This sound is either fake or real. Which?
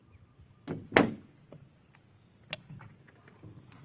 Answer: real